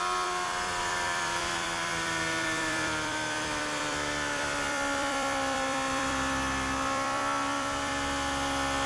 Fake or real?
fake